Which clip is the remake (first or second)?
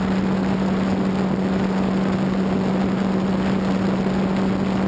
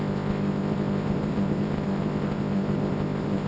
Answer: second